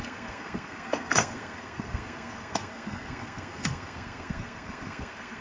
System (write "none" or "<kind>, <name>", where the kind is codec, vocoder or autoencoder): codec, SNAC